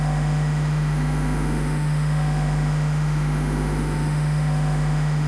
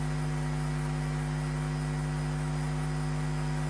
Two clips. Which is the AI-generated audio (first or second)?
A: first